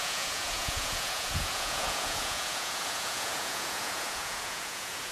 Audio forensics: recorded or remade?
remade